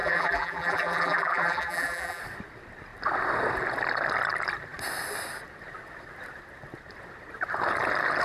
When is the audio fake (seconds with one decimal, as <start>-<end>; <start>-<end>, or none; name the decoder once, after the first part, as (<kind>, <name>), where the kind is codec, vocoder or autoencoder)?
0.0-2.2 (vocoder, BigVGAN v2)